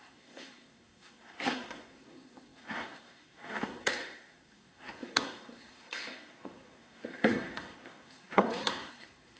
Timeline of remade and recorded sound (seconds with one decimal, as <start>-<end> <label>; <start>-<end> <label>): 0.0-9.4 remade